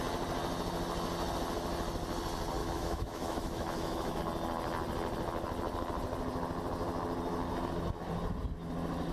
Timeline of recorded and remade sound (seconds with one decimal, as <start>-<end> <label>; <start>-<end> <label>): 0.0-2.6 recorded; 2.6-4.2 remade; 4.2-9.1 recorded